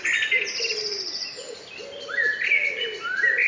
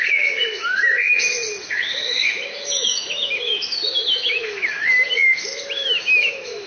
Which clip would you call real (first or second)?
first